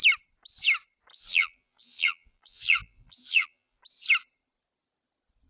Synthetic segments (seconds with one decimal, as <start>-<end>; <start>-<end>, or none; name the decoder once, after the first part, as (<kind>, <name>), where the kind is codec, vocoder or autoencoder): 1.1-3.8 (vocoder, BigVGAN v2)